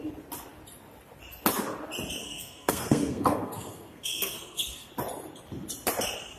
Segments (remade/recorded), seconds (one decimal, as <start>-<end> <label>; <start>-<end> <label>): 0.0-2.2 recorded; 2.2-4.9 remade; 4.9-6.4 recorded

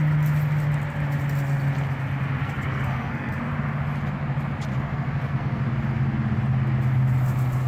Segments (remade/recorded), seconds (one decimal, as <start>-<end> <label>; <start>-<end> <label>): 0.0-2.4 recorded; 2.4-3.4 remade; 3.4-4.7 recorded; 4.7-5.6 remade; 5.6-7.7 recorded